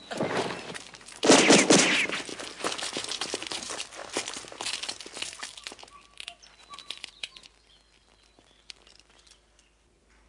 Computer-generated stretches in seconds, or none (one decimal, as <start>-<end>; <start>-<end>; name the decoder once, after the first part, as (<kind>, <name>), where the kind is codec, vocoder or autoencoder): 6.8-7.5 (vocoder, Vocos)

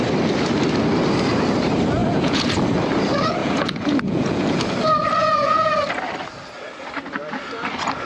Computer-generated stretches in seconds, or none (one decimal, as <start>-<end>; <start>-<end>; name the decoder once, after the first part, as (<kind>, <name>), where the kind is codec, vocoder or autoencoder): 2.0-2.5 (vocoder, Vocos); 3.4-4.6; 5.2-5.7

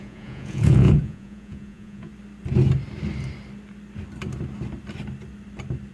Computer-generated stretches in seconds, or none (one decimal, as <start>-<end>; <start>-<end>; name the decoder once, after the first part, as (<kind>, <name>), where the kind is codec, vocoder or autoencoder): 0.0-2.1 (vocoder, Vocos)

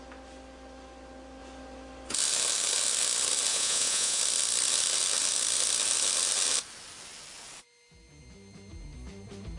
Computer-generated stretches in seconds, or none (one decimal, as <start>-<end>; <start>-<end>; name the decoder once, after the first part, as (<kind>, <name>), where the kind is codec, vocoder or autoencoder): 3.5-4.2 (vocoder, Vocos)